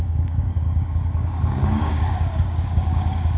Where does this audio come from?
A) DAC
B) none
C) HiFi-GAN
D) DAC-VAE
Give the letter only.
A